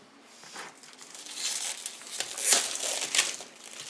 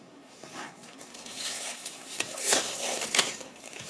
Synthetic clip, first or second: second